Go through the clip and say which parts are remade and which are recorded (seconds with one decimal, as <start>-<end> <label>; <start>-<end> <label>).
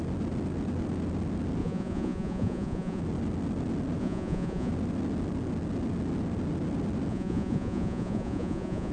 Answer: 0.0-1.6 recorded; 1.6-3.0 remade; 3.0-4.0 recorded; 4.0-4.7 remade; 4.7-7.1 recorded; 7.1-8.9 remade